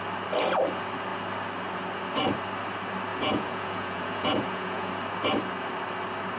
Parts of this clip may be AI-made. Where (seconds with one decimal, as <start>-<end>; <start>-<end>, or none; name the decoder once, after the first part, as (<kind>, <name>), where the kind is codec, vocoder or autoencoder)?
3.1-4.9 (vocoder, Vocos)